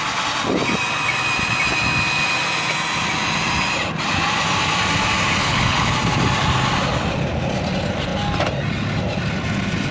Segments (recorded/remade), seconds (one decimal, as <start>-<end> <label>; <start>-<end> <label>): 0.0-5.4 recorded; 5.4-5.9 remade; 5.9-9.9 recorded